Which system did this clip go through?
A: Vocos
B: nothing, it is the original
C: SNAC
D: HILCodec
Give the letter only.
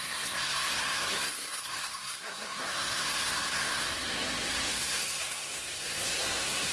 C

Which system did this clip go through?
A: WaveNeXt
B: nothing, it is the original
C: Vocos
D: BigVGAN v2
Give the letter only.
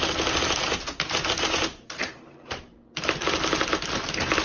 B